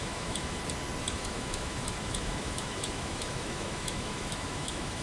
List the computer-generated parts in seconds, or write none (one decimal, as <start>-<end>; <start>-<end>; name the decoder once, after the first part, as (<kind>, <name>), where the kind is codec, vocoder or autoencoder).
0.0-0.6 (autoencoder, DAC-VAE); 1.1-5.0